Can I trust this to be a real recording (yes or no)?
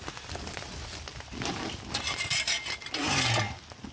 yes